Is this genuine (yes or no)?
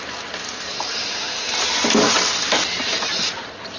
yes